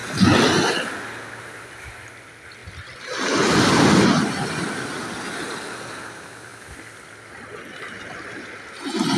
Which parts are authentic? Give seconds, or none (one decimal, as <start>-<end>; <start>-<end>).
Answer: 0.0-9.2